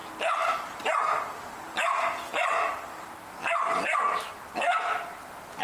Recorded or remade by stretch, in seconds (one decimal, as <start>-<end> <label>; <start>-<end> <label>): 0.0-5.6 recorded